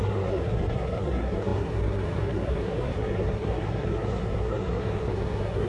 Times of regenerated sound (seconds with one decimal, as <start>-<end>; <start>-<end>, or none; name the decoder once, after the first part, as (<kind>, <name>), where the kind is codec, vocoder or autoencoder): 0.0-5.7 (codec, SNAC)

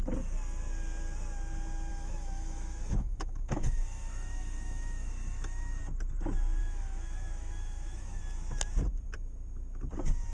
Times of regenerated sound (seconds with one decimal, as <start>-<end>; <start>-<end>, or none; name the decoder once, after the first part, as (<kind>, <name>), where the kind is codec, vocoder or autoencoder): 1.9-5.8 (autoencoder, DAC-VAE); 6.6-8.2